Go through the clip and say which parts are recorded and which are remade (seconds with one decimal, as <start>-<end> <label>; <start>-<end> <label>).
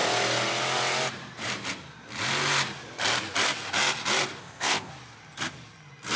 0.0-4.4 recorded; 4.4-4.9 remade; 4.9-6.2 recorded